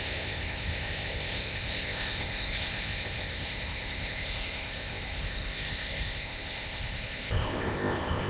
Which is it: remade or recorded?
remade